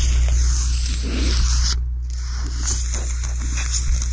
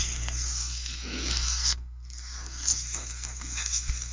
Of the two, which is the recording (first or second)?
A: first